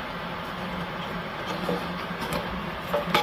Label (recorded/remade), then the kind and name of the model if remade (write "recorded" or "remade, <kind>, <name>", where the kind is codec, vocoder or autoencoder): recorded